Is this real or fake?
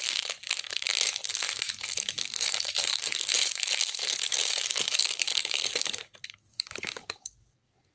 fake